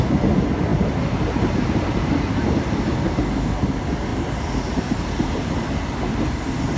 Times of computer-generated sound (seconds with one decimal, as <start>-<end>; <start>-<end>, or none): 0.7-2.3; 4.1-5.5